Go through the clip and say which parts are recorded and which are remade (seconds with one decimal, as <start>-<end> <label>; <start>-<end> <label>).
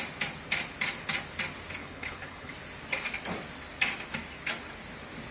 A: 0.0-1.8 recorded; 1.8-2.5 remade; 2.5-5.3 recorded